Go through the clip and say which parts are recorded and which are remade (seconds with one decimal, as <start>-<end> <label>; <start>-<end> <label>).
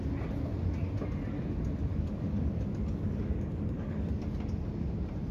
0.0-1.9 recorded; 1.9-4.2 remade; 4.2-5.3 recorded